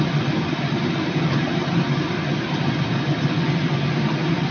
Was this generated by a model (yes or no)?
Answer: no